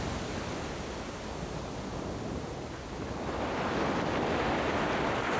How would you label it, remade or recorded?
recorded